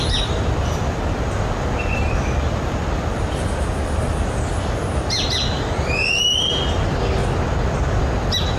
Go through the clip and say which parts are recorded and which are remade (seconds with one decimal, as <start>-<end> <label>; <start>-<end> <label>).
0.0-8.6 recorded